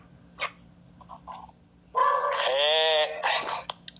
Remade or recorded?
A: recorded